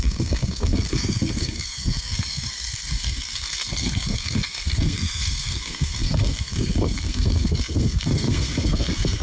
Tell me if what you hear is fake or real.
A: fake